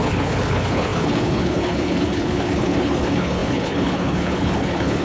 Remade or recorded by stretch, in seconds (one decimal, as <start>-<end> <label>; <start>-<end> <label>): 0.0-5.0 remade